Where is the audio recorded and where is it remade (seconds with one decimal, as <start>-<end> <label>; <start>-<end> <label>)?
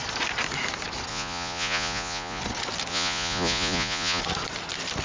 0.0-1.1 recorded; 1.1-2.4 remade; 2.4-2.9 recorded; 2.9-4.2 remade; 4.2-5.0 recorded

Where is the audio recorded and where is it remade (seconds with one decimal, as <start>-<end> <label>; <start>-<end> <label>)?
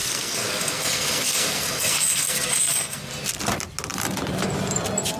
0.0-3.1 remade; 3.1-5.2 recorded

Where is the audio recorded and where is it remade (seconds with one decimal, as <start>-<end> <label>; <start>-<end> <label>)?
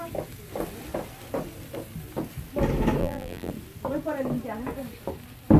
0.0-3.0 recorded; 3.0-3.5 remade; 3.5-5.6 recorded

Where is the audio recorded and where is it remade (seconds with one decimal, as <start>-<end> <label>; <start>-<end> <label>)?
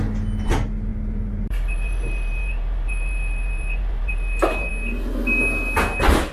0.0-0.9 recorded; 0.9-4.7 remade; 4.7-6.3 recorded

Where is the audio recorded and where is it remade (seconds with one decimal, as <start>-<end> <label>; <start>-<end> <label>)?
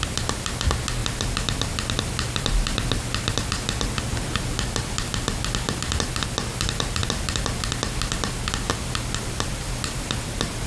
0.0-10.7 recorded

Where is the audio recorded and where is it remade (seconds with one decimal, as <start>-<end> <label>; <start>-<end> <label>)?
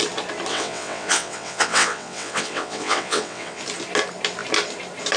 0.0-0.5 recorded; 0.5-3.6 remade; 3.6-5.2 recorded